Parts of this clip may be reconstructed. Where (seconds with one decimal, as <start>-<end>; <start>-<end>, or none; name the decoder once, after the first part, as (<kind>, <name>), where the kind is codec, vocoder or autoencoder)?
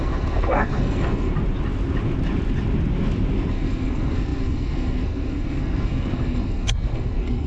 0.0-1.3 (codec, SNAC); 3.5-7.5